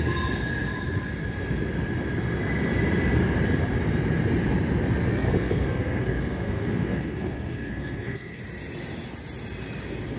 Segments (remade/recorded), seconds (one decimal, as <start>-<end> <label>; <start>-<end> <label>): 0.0-5.1 recorded; 5.1-8.4 remade; 8.4-10.2 recorded